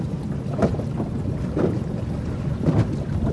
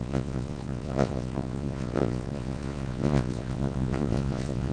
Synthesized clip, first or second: second